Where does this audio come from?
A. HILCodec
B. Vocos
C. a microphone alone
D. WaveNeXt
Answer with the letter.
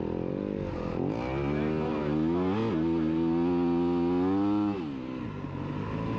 C